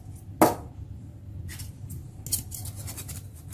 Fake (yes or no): no